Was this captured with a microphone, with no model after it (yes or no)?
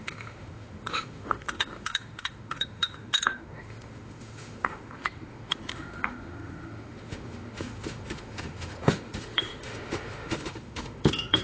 no